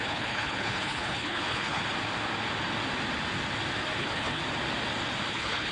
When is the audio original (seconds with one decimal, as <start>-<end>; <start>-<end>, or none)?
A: 1.8-4.0; 4.4-5.3